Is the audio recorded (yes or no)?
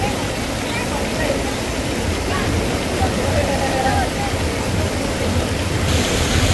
yes